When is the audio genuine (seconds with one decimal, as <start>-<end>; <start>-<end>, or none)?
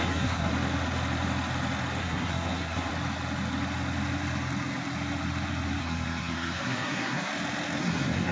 0.5-2.0; 2.9-5.8; 7.3-7.8